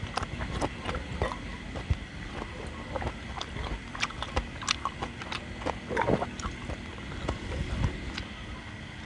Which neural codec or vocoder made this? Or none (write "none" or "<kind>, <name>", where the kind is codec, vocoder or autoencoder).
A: none